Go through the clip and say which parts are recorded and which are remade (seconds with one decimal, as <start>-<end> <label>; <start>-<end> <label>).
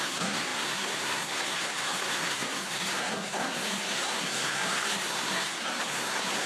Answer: 0.0-6.5 remade